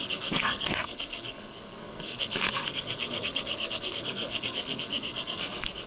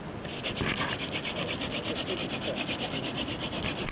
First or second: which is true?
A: second